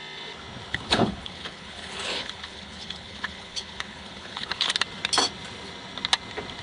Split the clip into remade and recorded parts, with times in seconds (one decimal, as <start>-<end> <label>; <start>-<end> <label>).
0.0-0.7 recorded; 0.7-4.7 remade; 4.7-6.6 recorded